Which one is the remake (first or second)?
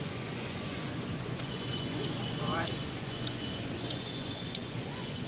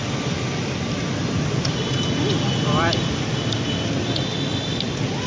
first